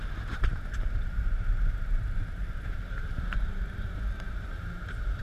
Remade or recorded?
remade